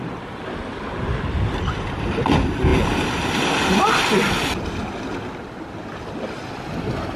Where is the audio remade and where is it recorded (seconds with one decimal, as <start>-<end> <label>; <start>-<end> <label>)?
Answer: 0.0-7.2 recorded